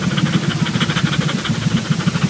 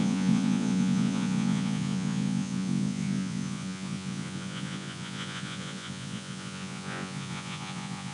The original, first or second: first